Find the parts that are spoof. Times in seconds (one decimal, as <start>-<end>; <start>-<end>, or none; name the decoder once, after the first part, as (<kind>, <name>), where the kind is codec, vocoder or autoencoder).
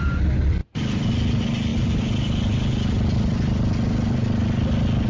none